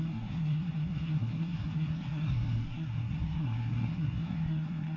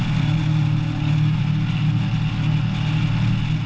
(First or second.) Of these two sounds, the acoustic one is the second